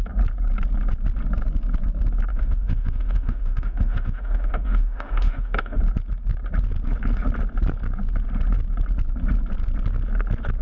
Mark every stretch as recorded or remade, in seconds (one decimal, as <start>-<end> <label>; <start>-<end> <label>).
0.0-2.3 recorded; 2.3-5.8 remade; 5.8-10.6 recorded